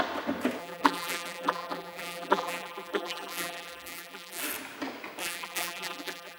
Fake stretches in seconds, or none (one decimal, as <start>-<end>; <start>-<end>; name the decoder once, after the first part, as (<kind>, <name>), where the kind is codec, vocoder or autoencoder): 0.6-4.4 (vocoder, BigVGAN v2); 5.2-6.4